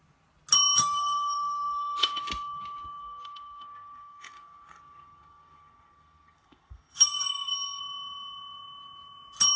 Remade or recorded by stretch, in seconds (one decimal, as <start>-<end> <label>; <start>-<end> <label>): 0.0-0.8 recorded; 0.8-2.2 remade; 2.2-3.0 recorded; 3.0-7.8 remade; 7.8-9.6 recorded